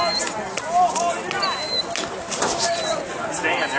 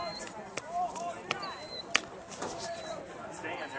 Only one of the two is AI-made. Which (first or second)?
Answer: second